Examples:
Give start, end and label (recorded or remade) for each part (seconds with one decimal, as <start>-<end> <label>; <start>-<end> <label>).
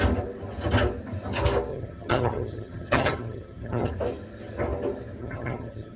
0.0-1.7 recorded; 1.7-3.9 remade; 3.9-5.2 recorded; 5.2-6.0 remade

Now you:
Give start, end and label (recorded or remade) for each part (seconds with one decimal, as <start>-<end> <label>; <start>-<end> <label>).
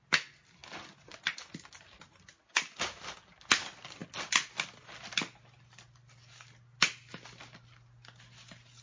0.0-8.8 recorded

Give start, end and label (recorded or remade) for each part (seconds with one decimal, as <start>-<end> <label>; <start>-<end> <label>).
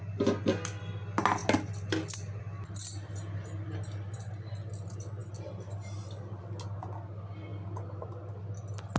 0.0-1.4 recorded; 1.4-2.4 remade; 2.4-5.2 recorded; 5.2-6.4 remade; 6.4-7.5 recorded; 7.5-8.0 remade; 8.0-9.0 recorded